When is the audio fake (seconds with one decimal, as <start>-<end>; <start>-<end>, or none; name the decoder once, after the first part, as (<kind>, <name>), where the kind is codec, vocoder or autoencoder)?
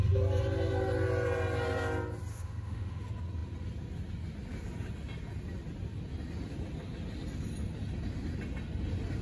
2.3-3.0 (autoencoder, DAC-VAE)